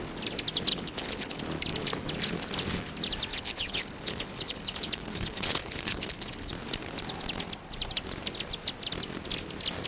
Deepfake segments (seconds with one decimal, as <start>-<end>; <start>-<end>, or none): 0.7-1.4; 3.3-6.5

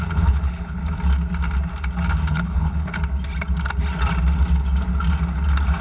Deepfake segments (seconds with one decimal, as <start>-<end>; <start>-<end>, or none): 0.0-0.8; 2.3-3.0